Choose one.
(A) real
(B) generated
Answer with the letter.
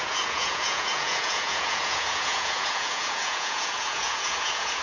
B